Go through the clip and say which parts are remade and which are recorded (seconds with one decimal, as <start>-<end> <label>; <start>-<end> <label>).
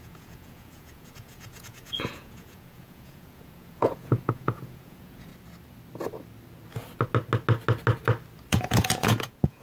0.0-5.3 remade; 5.3-8.5 recorded; 8.5-9.6 remade